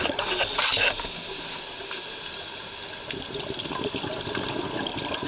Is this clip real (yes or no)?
yes